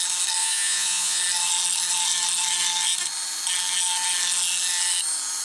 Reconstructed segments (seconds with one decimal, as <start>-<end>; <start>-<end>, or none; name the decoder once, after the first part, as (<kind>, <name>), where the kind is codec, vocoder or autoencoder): 0.4-1.2 (vocoder, Vocos)